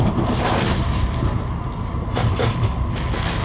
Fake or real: real